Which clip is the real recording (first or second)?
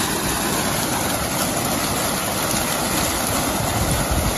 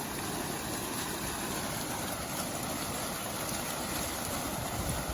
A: first